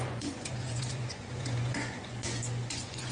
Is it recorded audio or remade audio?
remade